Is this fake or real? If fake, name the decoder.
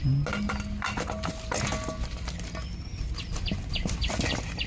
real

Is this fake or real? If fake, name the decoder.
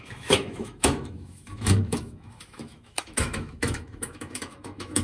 fake, autoencoder, DAC-VAE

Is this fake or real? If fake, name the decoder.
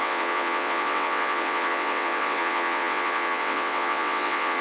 fake, vocoder, WaveNeXt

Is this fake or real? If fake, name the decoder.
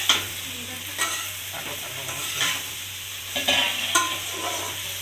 fake, vocoder, BigVGAN v2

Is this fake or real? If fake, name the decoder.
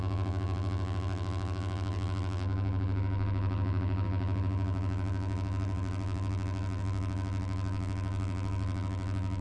fake, vocoder, BigVGAN v2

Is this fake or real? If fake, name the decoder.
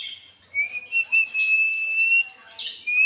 real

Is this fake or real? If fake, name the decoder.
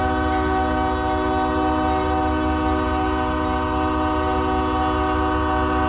real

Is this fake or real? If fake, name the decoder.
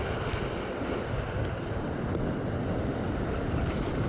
real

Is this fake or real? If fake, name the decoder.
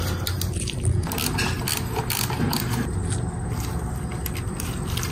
real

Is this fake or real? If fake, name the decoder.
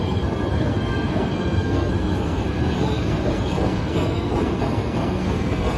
fake, codec, SNAC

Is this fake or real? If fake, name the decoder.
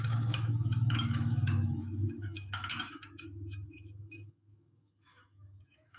fake, autoencoder, DAC-VAE